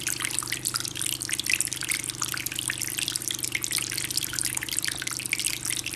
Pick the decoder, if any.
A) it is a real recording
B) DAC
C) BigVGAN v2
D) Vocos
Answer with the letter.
A